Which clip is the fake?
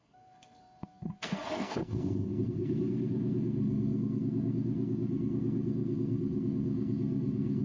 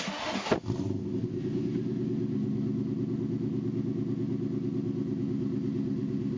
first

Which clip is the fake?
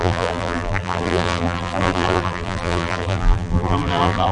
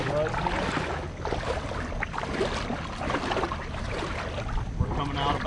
first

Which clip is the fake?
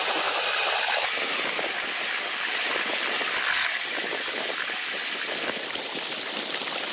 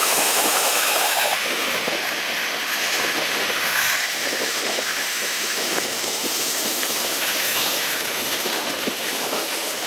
second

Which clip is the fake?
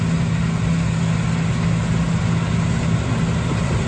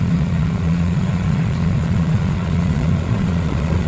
second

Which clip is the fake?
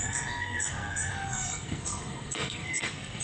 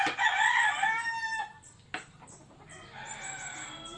first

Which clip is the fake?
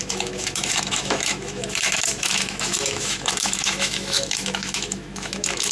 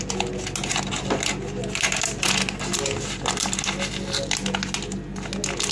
first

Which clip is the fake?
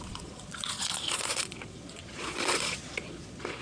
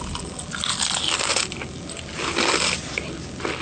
first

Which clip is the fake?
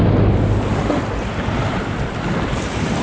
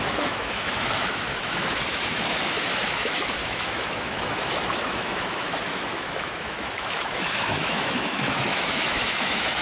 second